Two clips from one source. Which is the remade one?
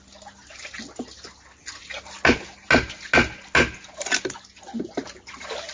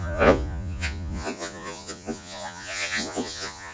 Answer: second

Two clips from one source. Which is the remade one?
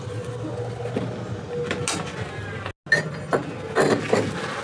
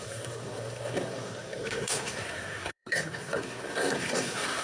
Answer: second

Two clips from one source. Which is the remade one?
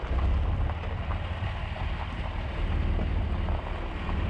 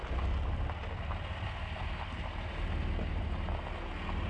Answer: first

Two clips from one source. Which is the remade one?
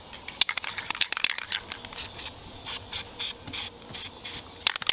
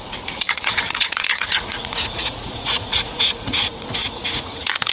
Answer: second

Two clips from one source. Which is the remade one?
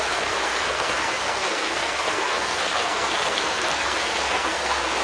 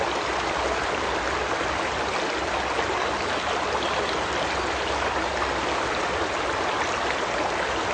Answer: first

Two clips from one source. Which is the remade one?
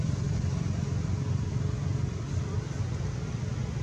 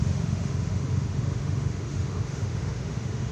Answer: second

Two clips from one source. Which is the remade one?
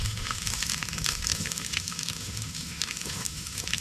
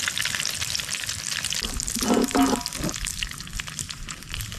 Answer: first